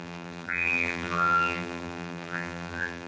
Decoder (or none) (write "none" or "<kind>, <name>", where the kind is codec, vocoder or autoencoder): vocoder, BigVGAN v2